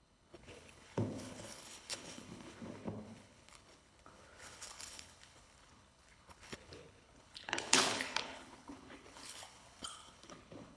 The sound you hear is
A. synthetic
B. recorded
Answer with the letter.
A